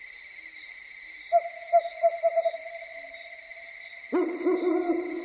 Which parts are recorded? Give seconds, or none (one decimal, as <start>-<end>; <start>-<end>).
0.8-3.0; 3.9-5.2